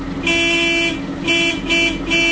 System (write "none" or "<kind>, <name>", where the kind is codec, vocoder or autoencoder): none